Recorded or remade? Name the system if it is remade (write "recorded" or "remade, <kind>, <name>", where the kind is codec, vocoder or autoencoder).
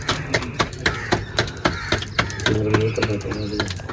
recorded